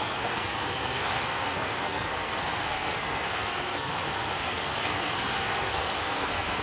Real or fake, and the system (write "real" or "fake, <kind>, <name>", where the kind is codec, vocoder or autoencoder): fake, codec, SNAC